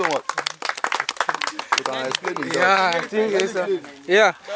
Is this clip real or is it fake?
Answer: real